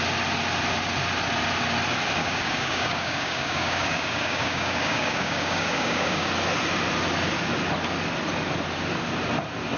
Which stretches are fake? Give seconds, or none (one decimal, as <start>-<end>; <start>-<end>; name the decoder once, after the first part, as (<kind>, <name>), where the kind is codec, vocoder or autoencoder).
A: 2.2-6.3 (codec, DAC)